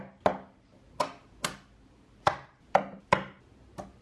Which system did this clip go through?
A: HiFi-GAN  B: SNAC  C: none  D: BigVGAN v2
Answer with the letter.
C